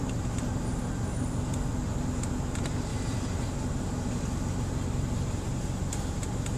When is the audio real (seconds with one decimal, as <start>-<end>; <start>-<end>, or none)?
0.0-6.6